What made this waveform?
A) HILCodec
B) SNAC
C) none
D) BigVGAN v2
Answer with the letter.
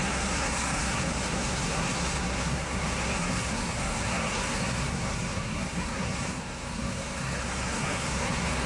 B